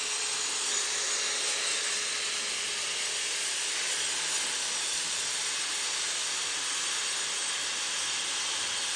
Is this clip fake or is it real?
real